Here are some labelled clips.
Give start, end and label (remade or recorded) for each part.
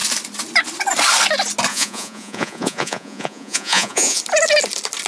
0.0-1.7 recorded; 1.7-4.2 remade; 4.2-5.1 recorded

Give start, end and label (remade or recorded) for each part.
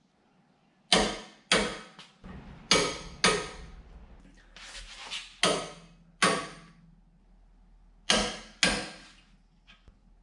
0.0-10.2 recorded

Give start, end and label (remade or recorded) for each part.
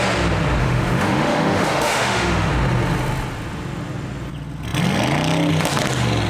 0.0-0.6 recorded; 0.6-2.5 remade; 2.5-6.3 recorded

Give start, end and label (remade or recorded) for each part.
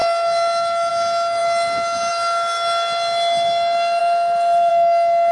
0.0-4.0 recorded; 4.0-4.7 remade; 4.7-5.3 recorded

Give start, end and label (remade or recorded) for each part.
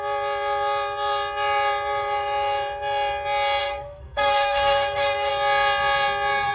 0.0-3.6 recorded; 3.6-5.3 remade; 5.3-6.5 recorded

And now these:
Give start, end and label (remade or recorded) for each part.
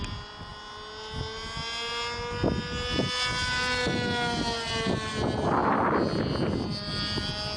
0.0-7.6 recorded